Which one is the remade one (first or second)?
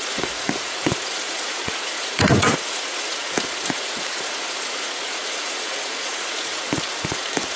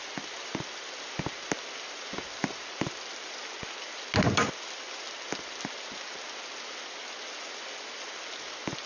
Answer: first